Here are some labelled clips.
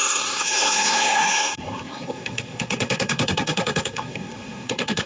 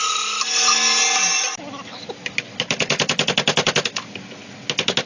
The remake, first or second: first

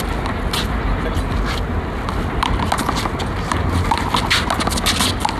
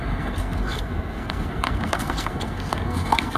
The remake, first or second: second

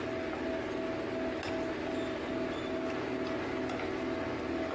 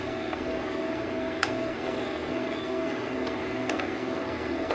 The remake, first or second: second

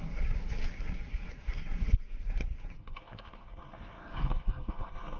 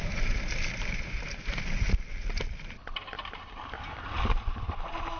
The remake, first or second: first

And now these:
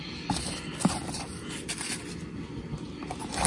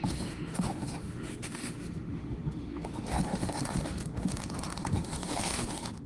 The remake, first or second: second